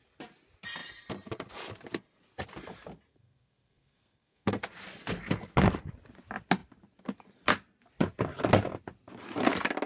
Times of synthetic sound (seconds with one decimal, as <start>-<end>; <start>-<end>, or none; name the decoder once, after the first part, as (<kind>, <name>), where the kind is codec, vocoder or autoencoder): 3.1-4.5 (codec, SNAC)